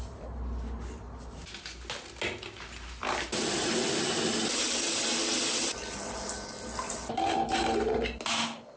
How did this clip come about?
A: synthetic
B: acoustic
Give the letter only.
B